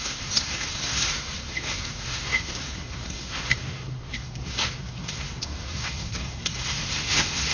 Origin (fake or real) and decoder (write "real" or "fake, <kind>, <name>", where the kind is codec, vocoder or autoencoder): fake, codec, SNAC